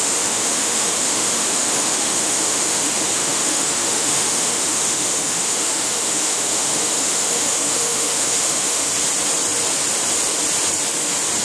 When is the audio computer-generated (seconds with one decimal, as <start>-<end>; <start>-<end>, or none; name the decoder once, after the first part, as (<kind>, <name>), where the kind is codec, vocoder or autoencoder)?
0.0-8.9 (autoencoder, DAC-VAE)